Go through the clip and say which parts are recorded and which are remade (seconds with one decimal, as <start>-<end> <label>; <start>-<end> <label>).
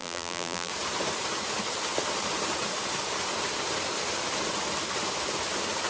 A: 0.0-0.7 remade; 0.7-5.9 recorded